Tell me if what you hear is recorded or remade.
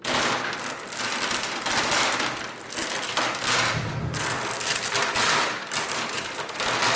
recorded